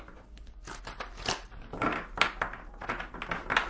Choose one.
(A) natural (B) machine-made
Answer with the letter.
A